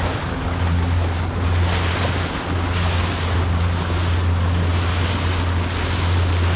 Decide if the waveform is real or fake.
real